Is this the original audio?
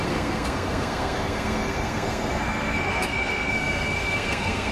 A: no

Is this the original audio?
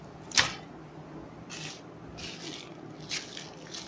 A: yes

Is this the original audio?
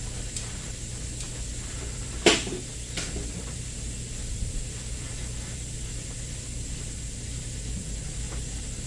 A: yes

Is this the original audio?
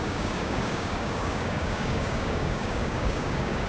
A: no